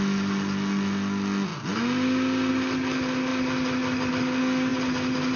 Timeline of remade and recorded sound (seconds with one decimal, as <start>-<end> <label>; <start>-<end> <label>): 0.0-5.4 recorded